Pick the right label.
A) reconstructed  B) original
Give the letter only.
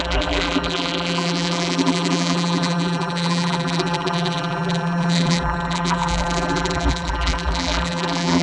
A